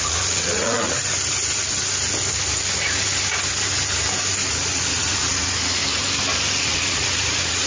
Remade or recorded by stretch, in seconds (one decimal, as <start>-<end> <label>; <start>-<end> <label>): 0.0-1.0 remade; 1.0-4.5 recorded; 4.5-5.8 remade; 5.8-6.6 recorded; 6.6-7.7 remade